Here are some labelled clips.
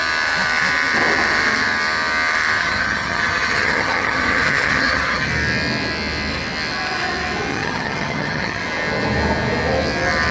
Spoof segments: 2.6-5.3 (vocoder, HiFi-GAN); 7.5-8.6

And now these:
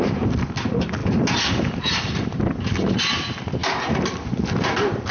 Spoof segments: none

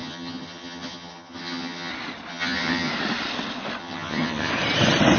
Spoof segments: 0.0-1.9 (vocoder, HiFi-GAN); 2.3-2.9; 3.8-4.5

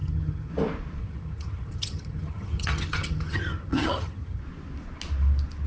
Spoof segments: 0.0-0.5 (vocoder, HiFi-GAN); 1.0-4.4

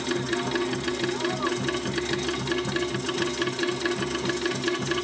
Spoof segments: none